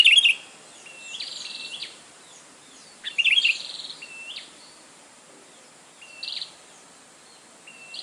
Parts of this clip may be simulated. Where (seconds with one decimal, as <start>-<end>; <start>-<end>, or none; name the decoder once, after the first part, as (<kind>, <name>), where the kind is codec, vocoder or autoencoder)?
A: 1.8-6.5 (vocoder, BigVGAN v2)